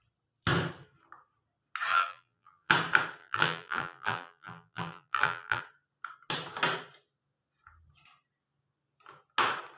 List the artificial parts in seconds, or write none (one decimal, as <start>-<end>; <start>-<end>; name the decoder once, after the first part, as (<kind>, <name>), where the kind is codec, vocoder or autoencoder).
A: 1.9-2.7 (vocoder, BigVGAN v2); 3.2-5.6